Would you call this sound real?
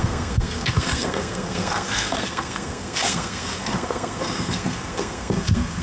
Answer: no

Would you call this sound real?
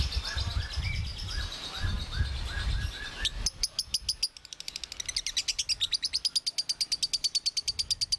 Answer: yes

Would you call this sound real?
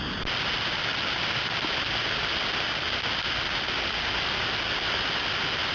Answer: yes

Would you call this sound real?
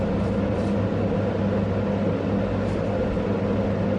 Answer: yes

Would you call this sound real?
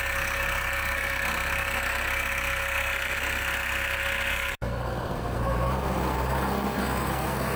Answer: no